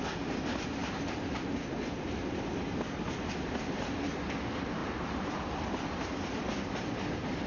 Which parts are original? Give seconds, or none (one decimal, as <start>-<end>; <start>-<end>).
0.0-4.8; 5.5-7.5